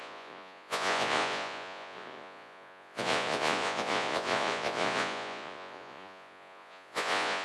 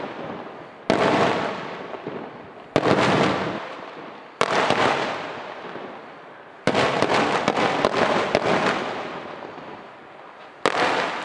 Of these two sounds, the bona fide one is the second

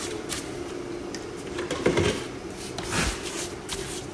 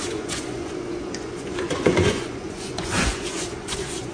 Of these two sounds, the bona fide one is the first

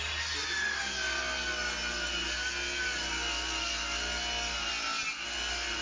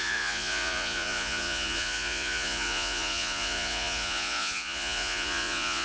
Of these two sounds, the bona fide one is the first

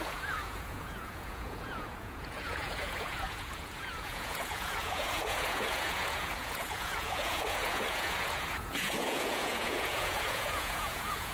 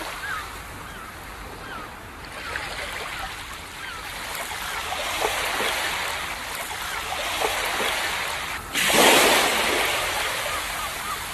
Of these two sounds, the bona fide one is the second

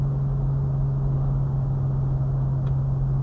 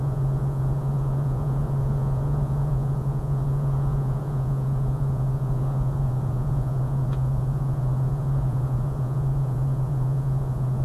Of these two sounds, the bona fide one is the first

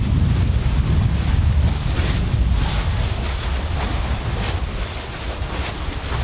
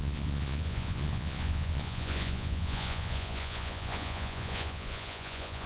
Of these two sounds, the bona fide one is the first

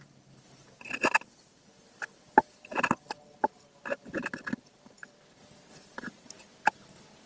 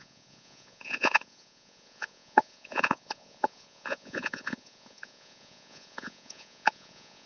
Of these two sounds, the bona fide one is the first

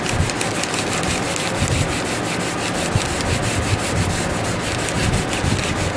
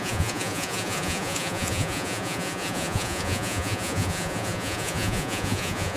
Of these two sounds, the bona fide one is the first